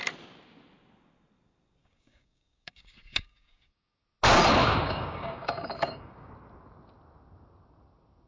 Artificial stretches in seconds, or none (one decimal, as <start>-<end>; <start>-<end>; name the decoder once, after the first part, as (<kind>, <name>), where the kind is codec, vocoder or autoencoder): 1.8-4.0 (codec, DAC); 4.6-6.3